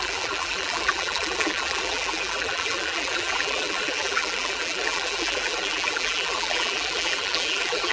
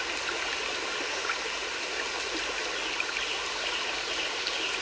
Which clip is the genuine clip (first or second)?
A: second